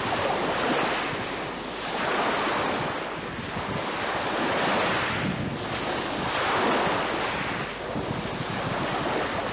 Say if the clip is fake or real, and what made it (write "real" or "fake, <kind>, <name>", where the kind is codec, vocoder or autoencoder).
real